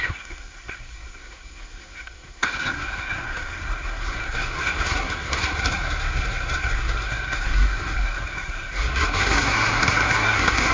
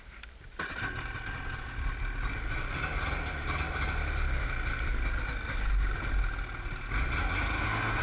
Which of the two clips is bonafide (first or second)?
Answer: second